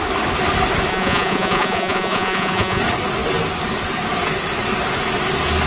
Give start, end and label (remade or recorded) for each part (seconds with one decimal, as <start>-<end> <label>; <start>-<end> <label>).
0.0-0.9 recorded; 0.9-2.8 remade; 2.8-5.7 recorded